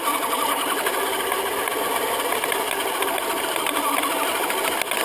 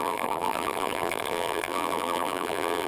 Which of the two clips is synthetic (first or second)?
second